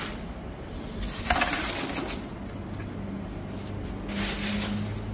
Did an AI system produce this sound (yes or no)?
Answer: no